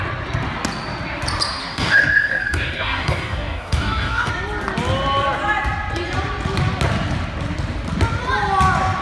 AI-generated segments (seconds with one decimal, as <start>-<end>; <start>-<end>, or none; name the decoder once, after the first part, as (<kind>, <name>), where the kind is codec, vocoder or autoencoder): 1.6-4.3 (codec, DAC)